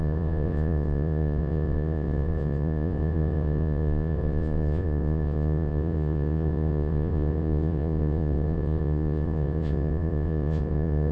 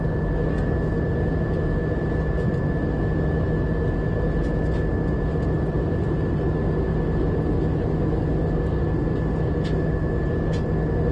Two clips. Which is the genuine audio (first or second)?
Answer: second